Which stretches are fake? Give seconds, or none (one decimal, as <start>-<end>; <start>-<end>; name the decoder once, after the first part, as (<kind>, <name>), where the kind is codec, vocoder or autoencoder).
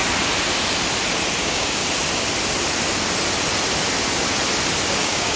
1.4-1.8 (codec, DAC); 5.0-5.4